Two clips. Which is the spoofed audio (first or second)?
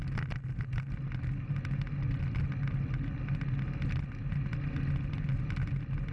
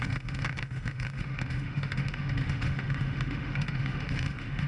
second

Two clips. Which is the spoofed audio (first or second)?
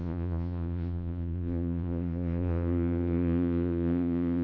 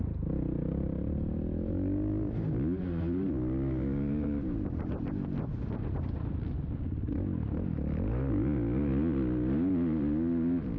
first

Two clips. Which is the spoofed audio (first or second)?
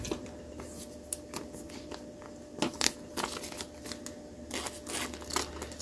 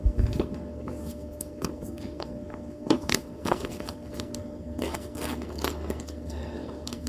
second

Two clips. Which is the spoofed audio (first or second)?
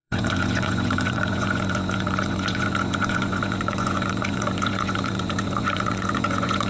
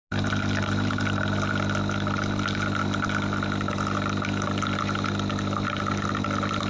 first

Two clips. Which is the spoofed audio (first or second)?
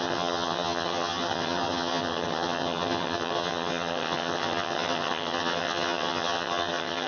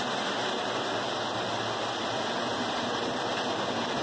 first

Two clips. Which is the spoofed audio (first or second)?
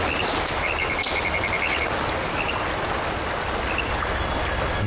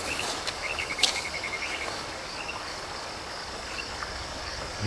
second